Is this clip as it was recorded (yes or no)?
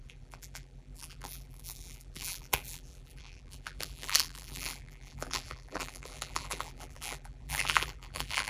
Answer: no